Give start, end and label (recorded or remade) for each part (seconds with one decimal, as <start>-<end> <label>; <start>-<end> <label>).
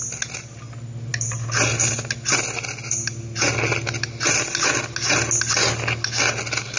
0.0-6.8 recorded